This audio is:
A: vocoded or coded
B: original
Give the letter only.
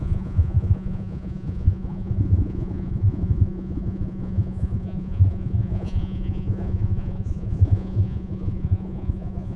A